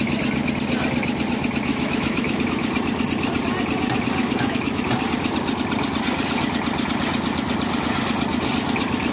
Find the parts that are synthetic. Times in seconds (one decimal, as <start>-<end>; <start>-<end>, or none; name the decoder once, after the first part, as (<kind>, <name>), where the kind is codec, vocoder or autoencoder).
1.7-2.4 (autoencoder, DAC-VAE); 4.2-4.8